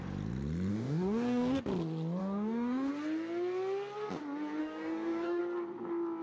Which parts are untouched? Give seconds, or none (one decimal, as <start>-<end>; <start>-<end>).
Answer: 0.0-0.7; 1.6-2.2; 2.9-4.6; 5.4-6.2